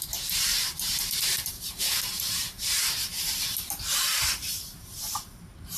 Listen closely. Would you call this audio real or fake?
fake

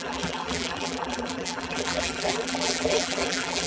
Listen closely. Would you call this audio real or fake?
fake